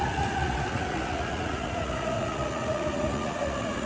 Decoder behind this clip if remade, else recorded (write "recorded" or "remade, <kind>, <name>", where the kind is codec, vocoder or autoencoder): remade, vocoder, Vocos